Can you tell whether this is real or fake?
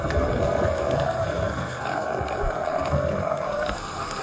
fake